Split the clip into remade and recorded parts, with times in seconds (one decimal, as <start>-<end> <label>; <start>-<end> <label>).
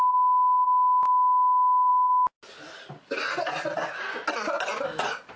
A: 0.0-5.4 recorded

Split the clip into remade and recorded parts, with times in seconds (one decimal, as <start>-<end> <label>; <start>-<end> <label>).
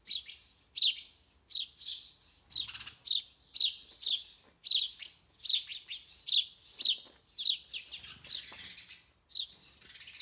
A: 0.0-10.2 recorded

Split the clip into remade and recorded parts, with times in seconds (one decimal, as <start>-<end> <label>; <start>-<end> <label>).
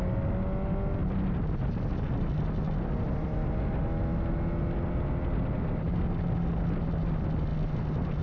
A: 0.0-8.2 recorded